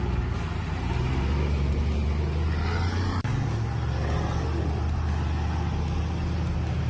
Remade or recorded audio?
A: recorded